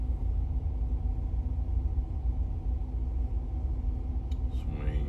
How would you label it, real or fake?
real